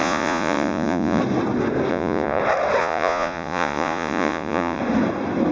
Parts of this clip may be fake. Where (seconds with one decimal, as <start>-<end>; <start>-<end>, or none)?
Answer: 0.0-1.2; 1.9-2.4; 2.8-4.8